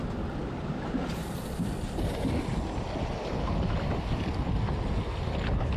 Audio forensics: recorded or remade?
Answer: recorded